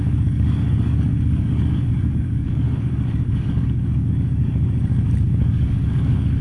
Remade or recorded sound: remade